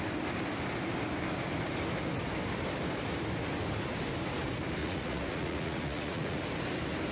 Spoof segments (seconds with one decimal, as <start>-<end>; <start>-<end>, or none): 4.8-6.4